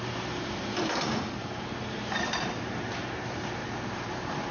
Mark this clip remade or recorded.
remade